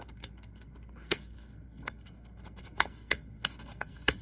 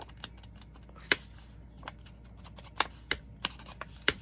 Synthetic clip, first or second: first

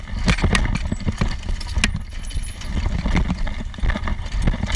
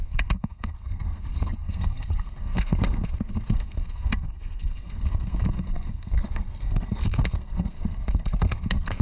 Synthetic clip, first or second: second